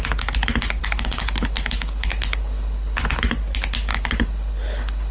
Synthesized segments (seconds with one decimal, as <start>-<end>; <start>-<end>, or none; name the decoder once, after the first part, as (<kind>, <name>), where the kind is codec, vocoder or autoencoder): 0.8-3.2 (codec, HILCodec); 3.9-5.1